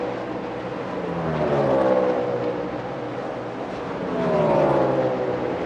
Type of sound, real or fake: real